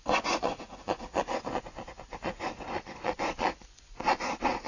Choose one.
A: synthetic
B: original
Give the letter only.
A